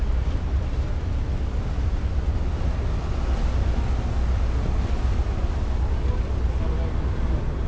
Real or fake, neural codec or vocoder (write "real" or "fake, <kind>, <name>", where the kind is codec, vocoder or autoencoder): real